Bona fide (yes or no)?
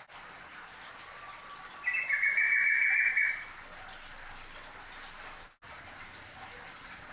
yes